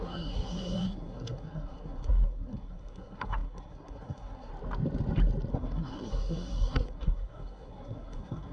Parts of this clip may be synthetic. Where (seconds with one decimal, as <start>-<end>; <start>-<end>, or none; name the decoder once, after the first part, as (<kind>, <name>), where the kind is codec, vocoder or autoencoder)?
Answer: 0.0-4.5 (codec, SNAC); 5.5-8.5

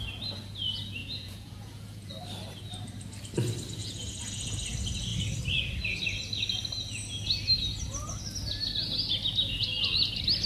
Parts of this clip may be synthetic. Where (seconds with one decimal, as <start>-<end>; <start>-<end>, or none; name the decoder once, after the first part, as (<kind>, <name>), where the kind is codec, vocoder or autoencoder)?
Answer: 1.0-2.1 (vocoder, Vocos); 3.8-4.6

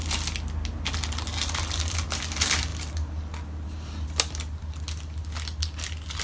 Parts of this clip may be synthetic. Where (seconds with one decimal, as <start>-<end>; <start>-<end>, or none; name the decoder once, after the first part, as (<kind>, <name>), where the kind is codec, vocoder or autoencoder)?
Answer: none

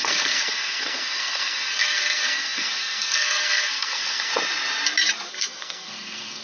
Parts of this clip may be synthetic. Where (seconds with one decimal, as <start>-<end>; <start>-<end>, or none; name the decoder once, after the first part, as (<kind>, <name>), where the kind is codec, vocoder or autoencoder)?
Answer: 0.0-4.3 (codec, SNAC); 5.3-6.4

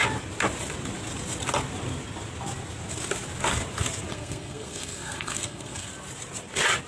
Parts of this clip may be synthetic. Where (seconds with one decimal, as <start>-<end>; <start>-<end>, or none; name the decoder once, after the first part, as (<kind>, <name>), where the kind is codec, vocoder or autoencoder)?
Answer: 4.1-5.9 (codec, SNAC)

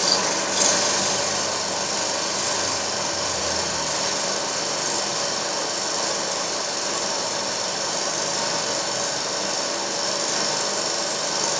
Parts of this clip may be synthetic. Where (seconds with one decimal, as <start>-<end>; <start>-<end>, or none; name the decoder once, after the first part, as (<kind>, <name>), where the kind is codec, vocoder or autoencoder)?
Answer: 0.0-3.6 (vocoder, BigVGAN v2); 5.1-8.3